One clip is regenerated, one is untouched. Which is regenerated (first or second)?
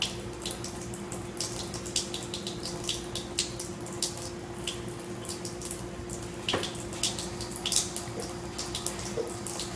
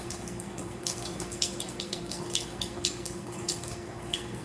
second